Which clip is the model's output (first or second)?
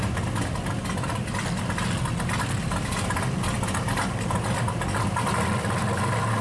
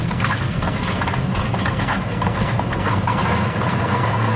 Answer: second